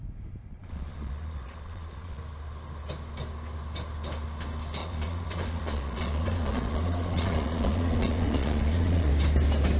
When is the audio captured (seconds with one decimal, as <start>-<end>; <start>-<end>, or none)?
0.0-0.5; 2.2-4.8; 9.1-9.8